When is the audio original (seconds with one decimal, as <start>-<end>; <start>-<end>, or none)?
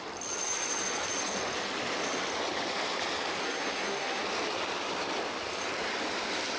0.0-3.4; 4.2-6.6